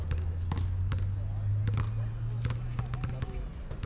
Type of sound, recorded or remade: recorded